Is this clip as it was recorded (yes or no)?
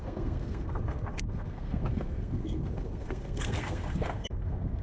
no